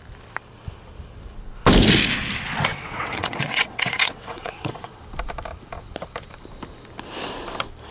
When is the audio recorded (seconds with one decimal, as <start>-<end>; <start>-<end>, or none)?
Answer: 0.0-2.7; 5.0-7.9